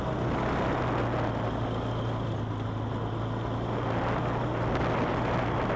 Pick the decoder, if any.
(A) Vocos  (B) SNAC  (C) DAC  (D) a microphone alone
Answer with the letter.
D